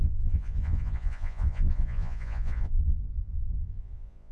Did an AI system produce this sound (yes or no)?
yes